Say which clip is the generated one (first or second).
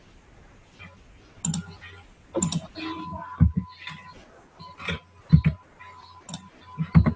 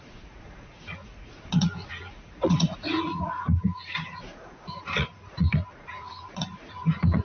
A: second